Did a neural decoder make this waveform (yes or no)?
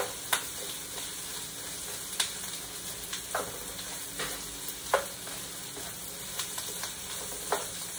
no